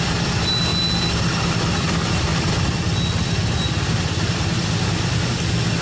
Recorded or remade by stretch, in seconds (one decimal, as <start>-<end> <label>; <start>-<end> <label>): 0.0-5.8 recorded